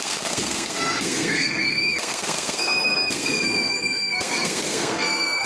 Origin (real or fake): fake